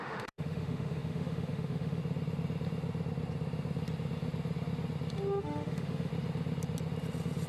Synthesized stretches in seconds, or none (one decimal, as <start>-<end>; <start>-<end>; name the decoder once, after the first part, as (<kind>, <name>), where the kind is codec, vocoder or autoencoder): 0.0-2.0 (autoencoder, DAC-VAE); 5.4-6.1